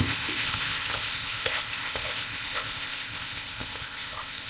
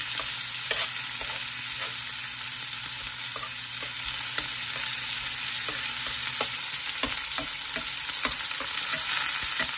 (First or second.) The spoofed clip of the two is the first